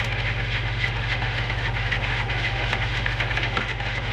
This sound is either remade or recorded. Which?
remade